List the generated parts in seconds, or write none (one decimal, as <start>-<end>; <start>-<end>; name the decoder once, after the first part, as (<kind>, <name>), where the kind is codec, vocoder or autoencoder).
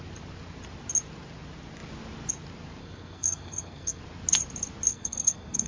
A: 2.8-4.0 (codec, SNAC); 4.9-5.7